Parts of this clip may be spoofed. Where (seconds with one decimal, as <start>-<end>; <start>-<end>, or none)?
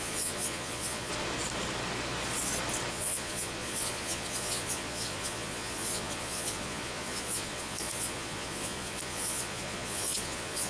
0.0-1.1; 2.9-10.7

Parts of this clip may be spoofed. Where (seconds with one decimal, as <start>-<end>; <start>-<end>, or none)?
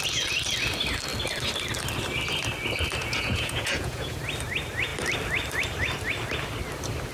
3.0-4.2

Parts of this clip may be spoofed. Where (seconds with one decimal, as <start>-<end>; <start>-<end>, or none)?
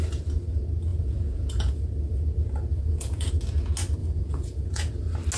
0.9-1.9; 2.7-3.3; 4.0-4.9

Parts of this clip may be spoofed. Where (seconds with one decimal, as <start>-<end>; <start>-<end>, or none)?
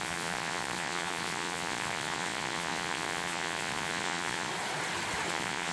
0.0-4.5; 5.3-5.7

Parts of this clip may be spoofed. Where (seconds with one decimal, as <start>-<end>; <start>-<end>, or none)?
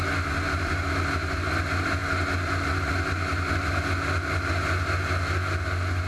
none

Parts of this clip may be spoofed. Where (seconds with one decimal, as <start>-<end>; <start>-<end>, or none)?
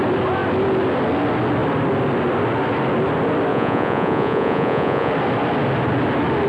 3.5-5.1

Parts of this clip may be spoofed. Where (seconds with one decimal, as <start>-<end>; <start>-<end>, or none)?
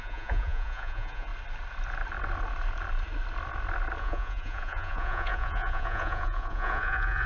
0.0-1.3; 4.0-7.3